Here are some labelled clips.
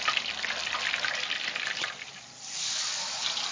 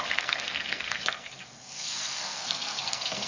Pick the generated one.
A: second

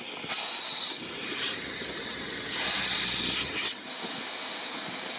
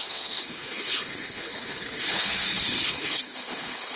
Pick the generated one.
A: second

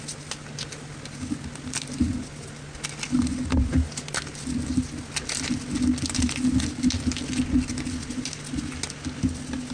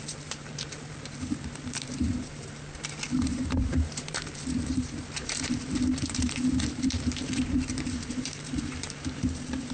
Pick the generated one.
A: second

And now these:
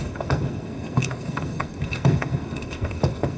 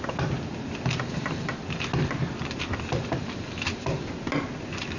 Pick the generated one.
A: first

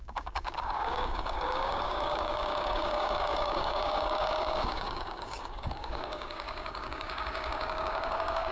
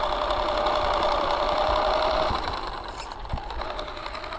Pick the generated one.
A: first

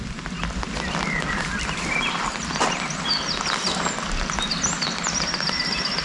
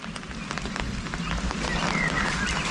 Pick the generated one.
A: first